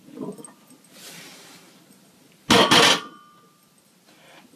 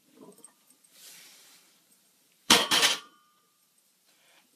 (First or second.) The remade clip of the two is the second